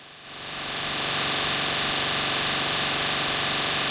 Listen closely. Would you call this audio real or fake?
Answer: real